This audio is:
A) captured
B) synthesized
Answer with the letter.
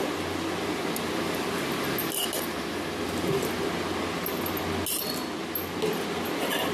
A